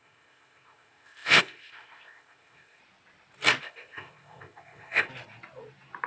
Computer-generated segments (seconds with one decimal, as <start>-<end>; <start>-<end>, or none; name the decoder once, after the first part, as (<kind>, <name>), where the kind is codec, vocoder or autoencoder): 0.0-2.8 (codec, ZipCodec); 3.6-5.1

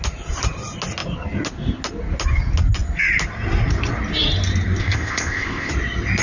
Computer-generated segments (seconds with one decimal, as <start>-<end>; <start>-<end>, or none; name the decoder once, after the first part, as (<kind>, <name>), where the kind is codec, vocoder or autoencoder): 4.8-5.7 (codec, ZipCodec)

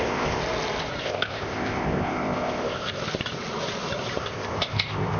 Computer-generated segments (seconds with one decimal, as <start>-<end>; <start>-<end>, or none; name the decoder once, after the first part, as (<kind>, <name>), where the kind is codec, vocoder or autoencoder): 0.0-0.4 (codec, ZipCodec); 1.0-3.0; 4.2-5.2

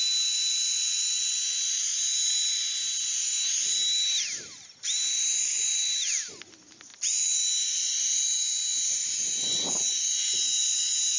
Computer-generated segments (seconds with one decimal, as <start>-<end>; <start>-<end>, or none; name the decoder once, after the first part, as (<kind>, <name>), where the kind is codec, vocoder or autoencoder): none

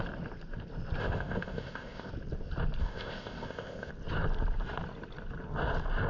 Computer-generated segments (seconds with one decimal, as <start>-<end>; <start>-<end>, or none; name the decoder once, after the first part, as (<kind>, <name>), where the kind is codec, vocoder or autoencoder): 1.0-2.1 (codec, ZipCodec); 2.8-3.9

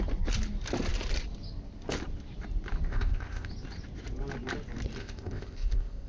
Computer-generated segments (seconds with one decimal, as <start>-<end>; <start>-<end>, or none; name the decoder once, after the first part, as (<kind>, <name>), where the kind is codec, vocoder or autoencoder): 2.9-3.5 (codec, ZipCodec); 5.0-6.1